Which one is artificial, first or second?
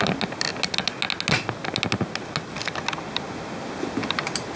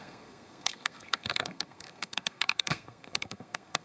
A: second